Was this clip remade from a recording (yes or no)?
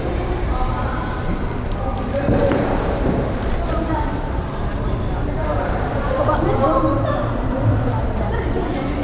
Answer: yes